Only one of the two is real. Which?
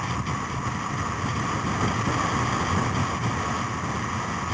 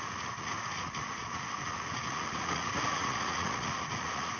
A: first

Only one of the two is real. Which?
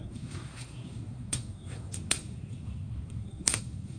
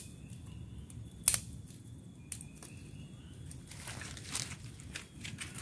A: second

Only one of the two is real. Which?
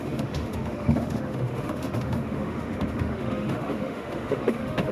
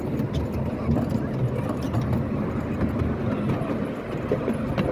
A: second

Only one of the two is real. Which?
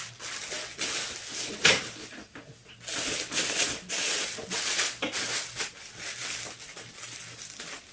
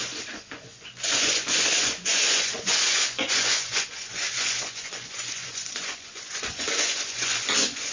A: first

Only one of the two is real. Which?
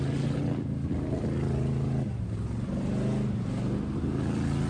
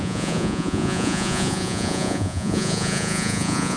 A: first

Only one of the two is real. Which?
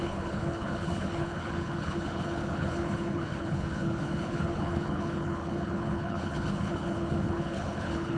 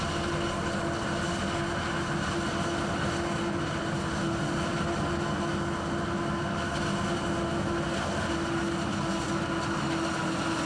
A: second